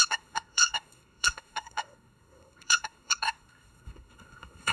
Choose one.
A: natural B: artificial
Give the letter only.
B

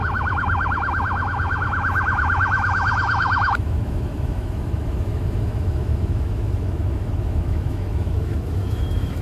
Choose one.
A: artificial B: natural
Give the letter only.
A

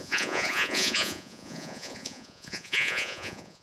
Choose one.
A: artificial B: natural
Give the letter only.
A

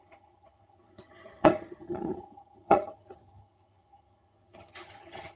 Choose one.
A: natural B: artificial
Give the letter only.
B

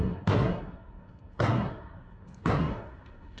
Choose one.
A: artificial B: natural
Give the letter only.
A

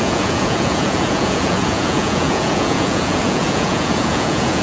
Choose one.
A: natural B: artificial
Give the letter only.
B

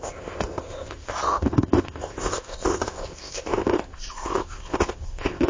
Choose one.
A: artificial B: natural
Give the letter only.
A